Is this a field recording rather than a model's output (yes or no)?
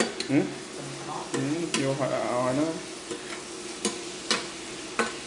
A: yes